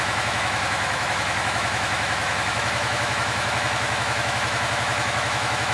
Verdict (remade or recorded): remade